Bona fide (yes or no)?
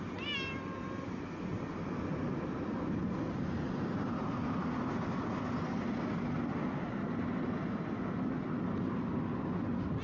yes